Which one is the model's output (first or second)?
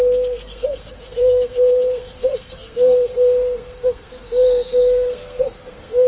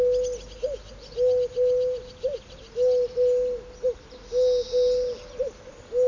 first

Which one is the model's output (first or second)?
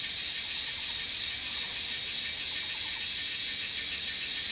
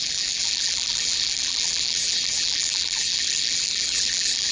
second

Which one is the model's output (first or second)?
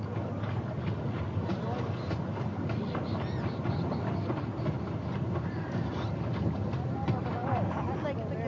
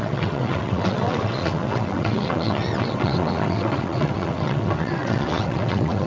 second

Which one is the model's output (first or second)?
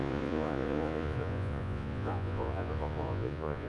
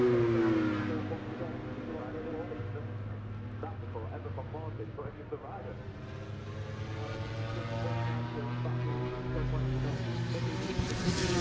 first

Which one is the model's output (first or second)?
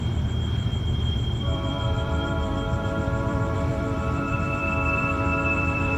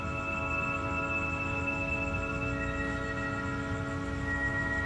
first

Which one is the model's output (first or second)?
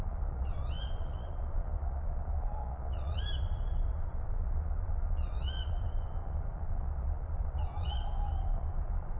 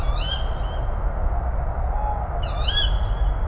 first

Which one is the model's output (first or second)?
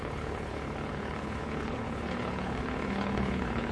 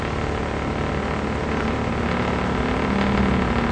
first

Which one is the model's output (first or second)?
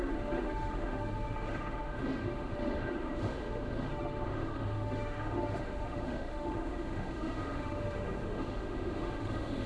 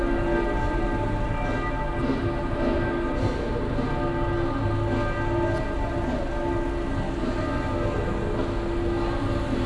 first